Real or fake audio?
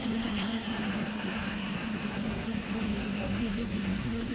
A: fake